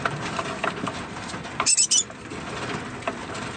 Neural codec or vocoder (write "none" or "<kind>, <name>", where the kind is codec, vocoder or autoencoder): none